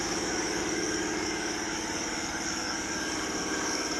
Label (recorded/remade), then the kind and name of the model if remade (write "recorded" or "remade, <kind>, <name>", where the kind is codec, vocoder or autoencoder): remade, codec, DAC